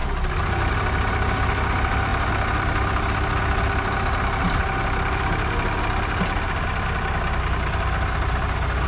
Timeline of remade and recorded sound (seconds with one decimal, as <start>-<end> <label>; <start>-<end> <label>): 0.0-8.9 recorded